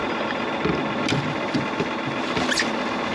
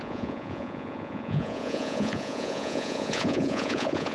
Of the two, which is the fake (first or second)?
second